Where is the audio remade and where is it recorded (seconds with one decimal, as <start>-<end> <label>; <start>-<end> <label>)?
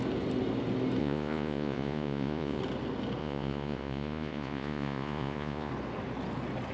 0.0-1.0 recorded; 1.0-2.6 remade; 2.6-3.2 recorded; 3.2-5.7 remade; 5.7-6.7 recorded